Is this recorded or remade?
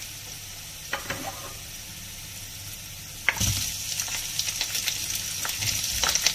recorded